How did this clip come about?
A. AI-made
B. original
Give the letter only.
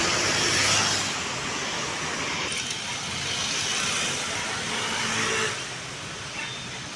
B